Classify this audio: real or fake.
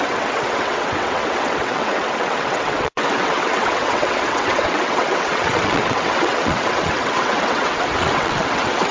fake